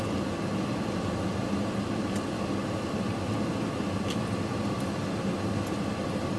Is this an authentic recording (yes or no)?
yes